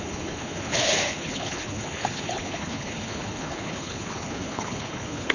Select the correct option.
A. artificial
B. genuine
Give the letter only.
A